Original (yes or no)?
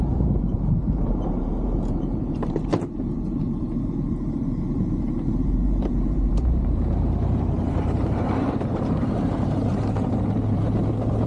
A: no